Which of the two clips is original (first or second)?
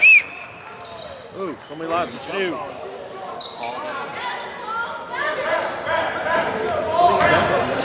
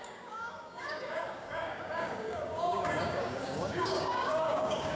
first